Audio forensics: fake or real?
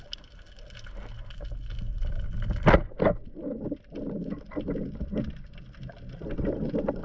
real